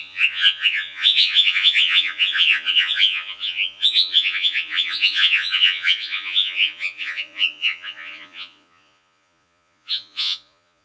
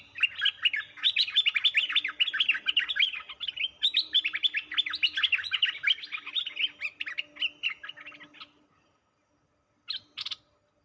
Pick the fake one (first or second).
first